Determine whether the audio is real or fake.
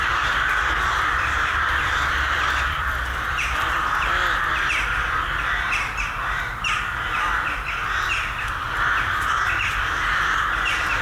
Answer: fake